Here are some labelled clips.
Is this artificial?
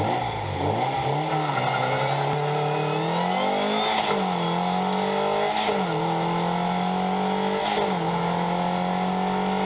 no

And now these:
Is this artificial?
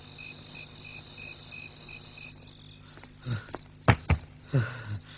no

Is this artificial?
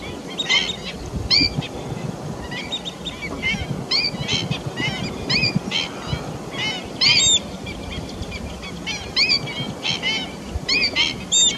no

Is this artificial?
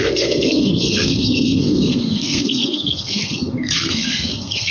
yes